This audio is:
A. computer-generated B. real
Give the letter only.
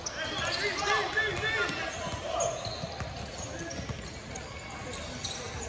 B